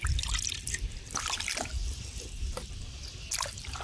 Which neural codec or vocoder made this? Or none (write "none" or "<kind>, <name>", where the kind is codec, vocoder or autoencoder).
none